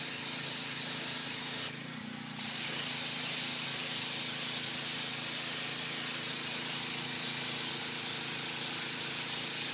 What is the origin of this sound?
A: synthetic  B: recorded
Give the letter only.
B